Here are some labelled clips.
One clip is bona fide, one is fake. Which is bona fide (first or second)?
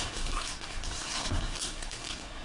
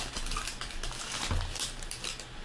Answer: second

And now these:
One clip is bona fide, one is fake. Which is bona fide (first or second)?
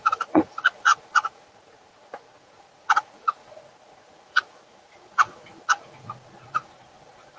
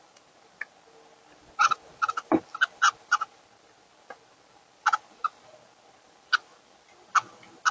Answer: second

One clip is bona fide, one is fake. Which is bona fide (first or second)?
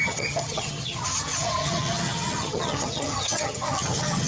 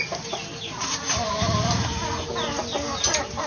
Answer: second